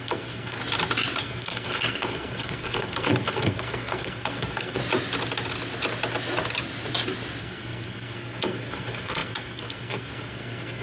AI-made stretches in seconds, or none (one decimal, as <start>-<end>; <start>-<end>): 0.0-0.6; 1.2-4.8; 7.4-10.8